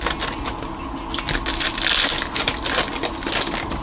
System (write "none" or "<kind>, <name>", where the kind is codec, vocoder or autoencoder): none